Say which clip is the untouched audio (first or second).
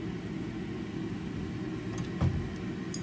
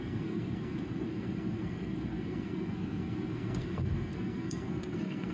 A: first